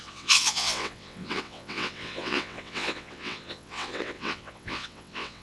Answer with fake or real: fake